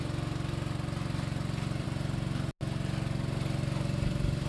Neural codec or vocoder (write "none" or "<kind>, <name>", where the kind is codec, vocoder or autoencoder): none